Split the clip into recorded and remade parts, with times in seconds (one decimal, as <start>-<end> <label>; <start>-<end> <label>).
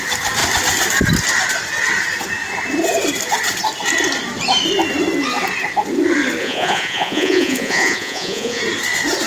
0.0-6.4 recorded; 6.4-8.6 remade; 8.6-9.3 recorded